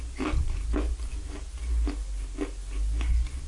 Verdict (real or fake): real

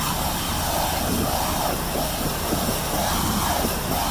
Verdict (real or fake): real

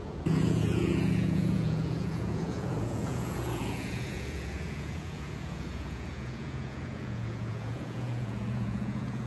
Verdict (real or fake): fake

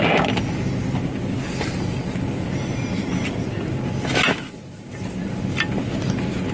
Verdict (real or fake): real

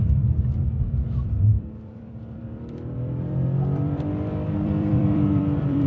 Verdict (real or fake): fake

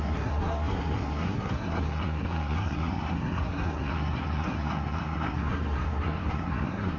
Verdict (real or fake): fake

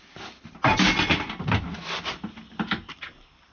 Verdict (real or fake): real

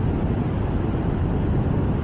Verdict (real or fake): real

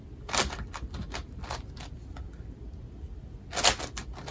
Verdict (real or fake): real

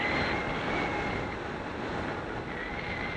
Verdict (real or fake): real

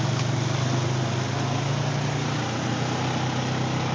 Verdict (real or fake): real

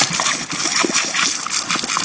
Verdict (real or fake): real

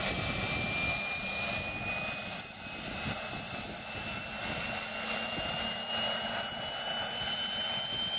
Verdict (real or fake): real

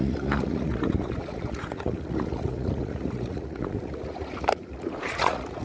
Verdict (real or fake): fake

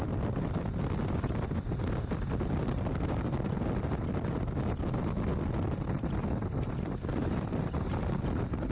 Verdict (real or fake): real